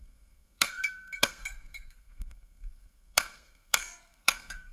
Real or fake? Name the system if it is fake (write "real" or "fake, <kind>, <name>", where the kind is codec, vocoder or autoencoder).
fake, codec, SNAC